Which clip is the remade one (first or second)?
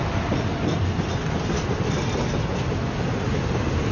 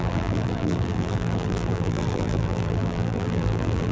second